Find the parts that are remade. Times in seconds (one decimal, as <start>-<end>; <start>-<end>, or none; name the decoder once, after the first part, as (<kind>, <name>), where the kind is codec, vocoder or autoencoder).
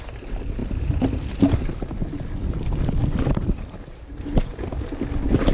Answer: none